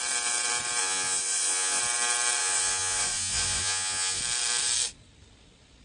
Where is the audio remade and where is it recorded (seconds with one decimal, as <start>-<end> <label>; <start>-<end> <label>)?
0.0-0.8 recorded; 0.8-1.8 remade; 1.8-2.4 recorded; 2.4-4.2 remade; 4.2-5.8 recorded